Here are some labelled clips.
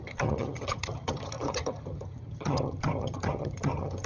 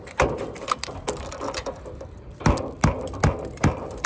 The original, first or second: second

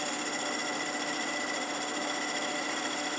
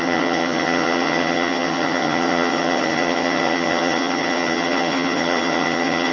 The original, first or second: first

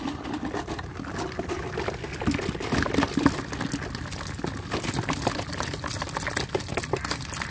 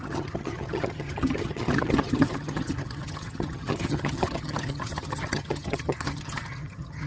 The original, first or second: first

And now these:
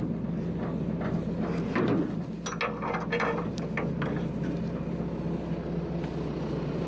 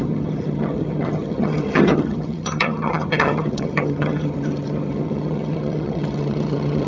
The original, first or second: first